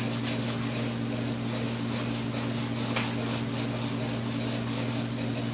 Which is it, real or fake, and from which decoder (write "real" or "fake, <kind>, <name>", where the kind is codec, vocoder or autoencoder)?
real